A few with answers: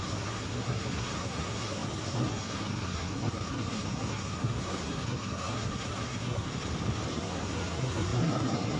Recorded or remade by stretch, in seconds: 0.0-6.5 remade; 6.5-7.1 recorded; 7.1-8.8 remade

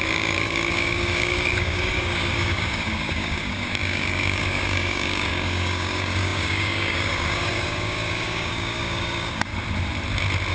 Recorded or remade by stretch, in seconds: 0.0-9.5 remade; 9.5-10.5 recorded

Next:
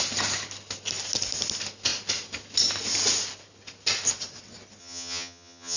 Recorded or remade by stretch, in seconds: 0.0-4.8 recorded; 4.8-5.8 remade

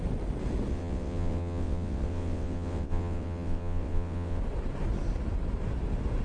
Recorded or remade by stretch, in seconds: 0.0-0.7 recorded; 0.7-4.4 remade; 4.4-6.2 recorded